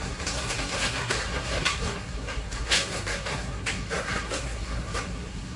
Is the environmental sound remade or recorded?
remade